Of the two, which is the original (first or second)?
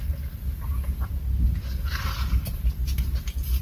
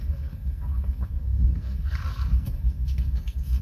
first